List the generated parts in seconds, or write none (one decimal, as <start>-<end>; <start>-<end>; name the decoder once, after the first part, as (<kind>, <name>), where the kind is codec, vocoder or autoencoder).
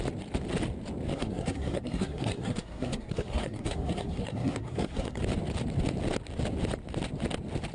1.1-5.2 (codec, SNAC)